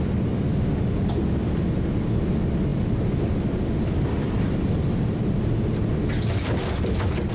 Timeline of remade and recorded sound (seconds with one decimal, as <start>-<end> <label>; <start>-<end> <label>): 0.0-7.3 recorded